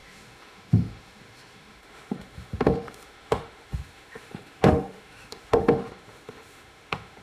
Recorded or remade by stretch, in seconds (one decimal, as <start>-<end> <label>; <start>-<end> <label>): 0.0-7.2 remade